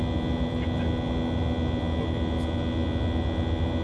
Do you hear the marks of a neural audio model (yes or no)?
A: no